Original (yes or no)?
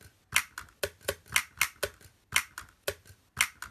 yes